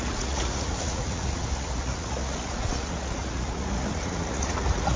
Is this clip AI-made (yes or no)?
yes